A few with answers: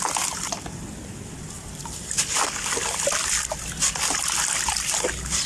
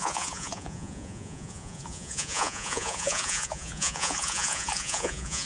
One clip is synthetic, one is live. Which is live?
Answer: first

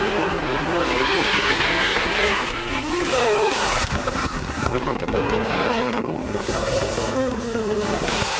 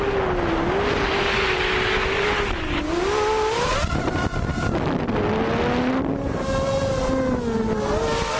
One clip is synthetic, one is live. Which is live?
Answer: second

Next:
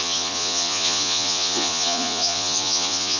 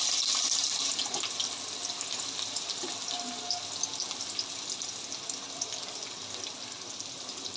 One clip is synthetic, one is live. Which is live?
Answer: second